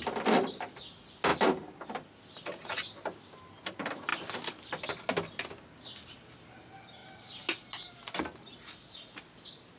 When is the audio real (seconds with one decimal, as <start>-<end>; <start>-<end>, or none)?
0.0-9.8